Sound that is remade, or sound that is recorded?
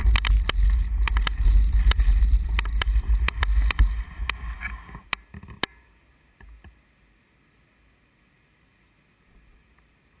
recorded